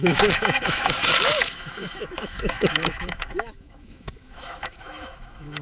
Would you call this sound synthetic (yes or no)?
yes